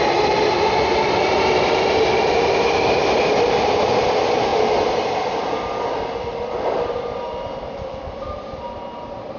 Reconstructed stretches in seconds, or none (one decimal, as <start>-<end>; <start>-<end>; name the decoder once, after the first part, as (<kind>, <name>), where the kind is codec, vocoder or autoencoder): none